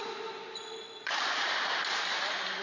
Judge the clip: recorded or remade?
recorded